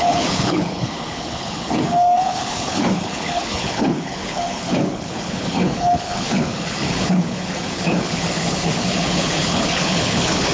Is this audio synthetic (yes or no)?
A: yes